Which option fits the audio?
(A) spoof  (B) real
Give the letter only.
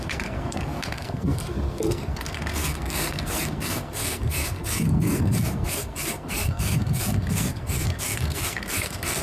A